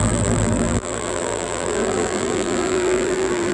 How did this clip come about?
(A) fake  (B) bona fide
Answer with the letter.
A